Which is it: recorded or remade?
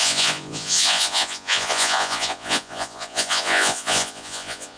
remade